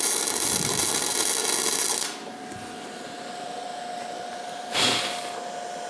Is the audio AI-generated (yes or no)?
no